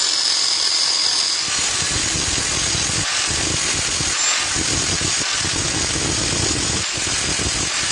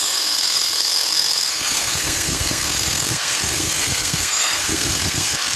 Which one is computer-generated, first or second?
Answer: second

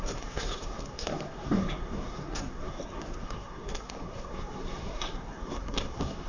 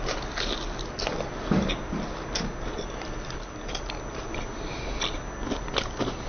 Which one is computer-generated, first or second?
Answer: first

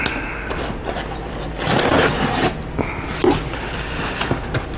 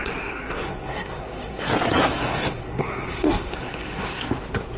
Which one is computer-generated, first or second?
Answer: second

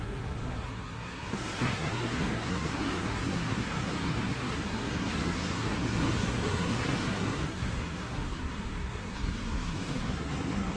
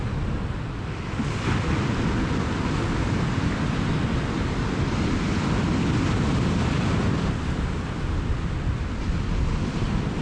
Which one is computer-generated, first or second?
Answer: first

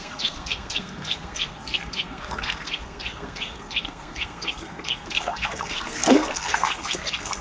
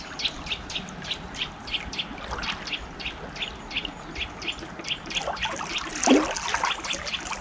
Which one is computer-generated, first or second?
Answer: first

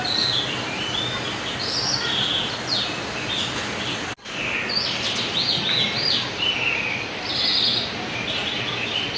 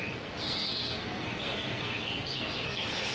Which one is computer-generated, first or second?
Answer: second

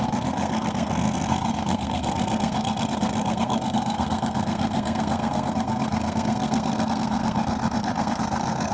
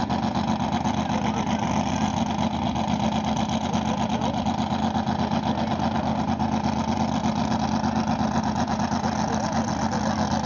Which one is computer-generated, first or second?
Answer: first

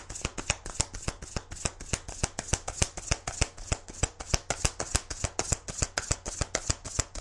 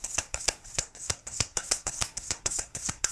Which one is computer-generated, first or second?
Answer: second